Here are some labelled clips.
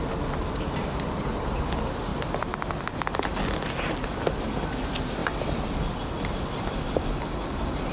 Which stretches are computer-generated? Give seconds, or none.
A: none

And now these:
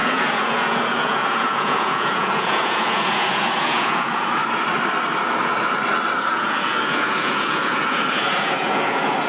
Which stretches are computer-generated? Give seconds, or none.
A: 0.0-4.4 (vocoder, Vocos); 6.3-9.3

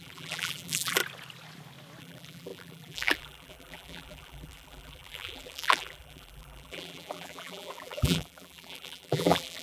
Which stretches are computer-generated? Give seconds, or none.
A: 0.0-1.0 (vocoder, BigVGAN v2); 2.0-9.6

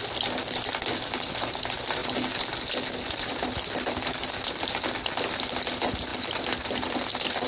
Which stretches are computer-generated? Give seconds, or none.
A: none

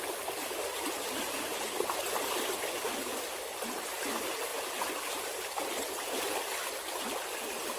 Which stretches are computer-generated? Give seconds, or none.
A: none

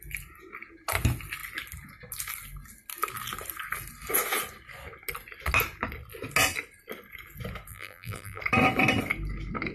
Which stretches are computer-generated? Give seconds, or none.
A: 7.7-8.4 (vocoder, BigVGAN v2)